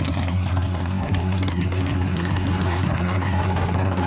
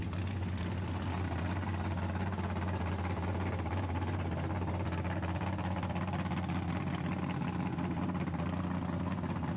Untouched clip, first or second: second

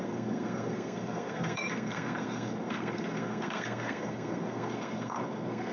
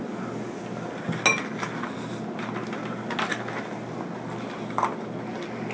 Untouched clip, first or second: second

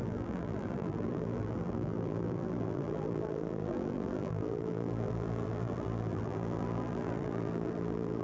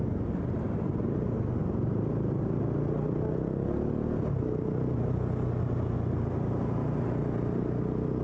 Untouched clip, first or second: second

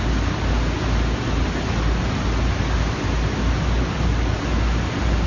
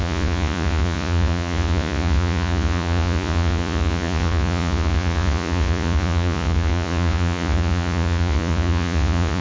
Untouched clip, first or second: first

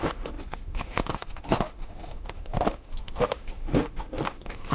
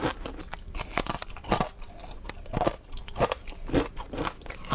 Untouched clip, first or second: second